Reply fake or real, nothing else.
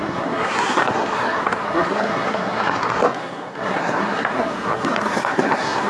fake